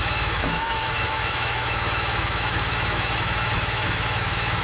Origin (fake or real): fake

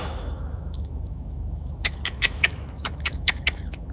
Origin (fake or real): fake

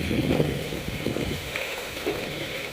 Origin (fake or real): fake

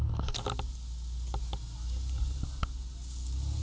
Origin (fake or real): real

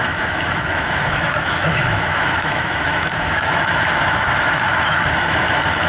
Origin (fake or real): fake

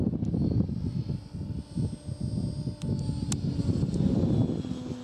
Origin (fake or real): real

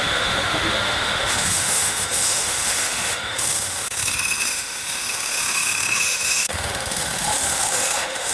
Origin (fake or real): fake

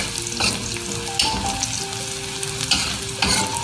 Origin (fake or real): real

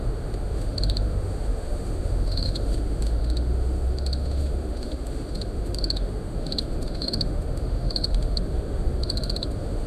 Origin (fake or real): fake